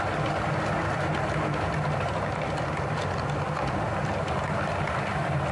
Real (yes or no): yes